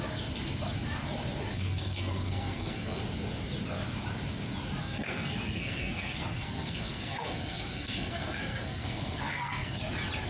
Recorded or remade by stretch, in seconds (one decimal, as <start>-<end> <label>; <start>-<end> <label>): 0.0-1.5 recorded; 1.5-3.0 remade; 3.0-4.8 recorded; 4.8-9.8 remade; 9.8-10.3 recorded